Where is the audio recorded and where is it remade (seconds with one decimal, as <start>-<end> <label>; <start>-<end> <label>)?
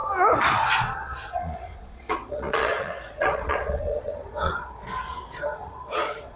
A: 0.0-0.8 recorded; 0.8-6.4 remade